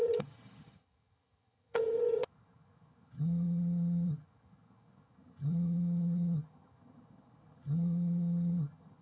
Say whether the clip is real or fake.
fake